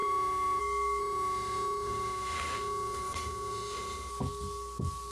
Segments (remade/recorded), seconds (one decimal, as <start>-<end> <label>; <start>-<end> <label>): 0.0-0.6 remade; 0.6-1.0 recorded; 1.0-4.1 remade; 4.1-5.1 recorded